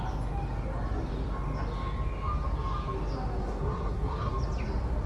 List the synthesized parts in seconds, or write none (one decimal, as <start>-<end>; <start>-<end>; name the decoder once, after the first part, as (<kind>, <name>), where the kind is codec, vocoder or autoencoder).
3.4-4.3 (codec, SNAC)